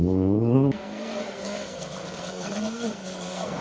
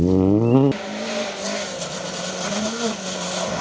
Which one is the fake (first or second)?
first